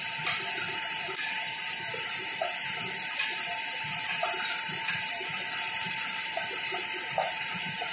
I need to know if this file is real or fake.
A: fake